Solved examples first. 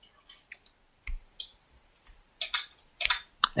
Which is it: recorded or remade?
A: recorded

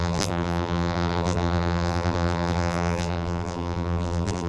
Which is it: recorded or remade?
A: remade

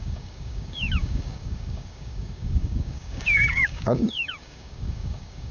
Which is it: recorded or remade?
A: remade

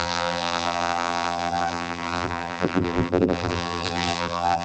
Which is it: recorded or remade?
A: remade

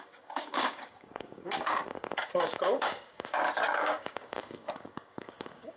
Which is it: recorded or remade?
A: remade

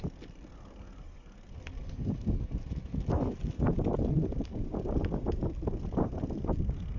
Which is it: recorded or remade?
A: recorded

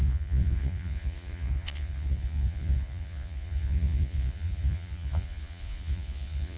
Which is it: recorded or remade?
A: remade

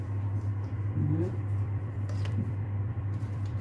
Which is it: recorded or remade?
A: remade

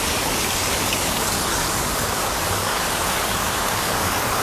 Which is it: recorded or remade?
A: remade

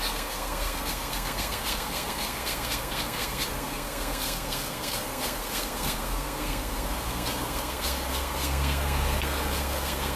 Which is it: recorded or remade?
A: remade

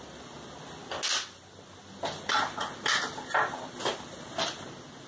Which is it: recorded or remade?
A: recorded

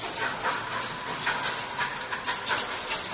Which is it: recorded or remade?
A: recorded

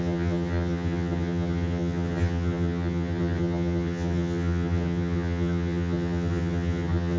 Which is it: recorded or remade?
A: remade